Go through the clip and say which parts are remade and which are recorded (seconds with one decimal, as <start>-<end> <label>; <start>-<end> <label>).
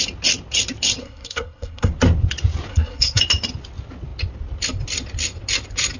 0.0-1.0 recorded; 1.0-1.9 remade; 1.9-2.7 recorded; 2.7-3.2 remade; 3.2-6.0 recorded